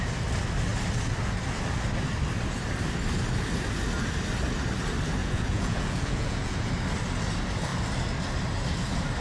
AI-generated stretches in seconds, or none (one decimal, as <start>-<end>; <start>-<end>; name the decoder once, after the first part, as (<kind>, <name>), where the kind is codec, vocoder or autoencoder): 5.2-6.7 (vocoder, Vocos)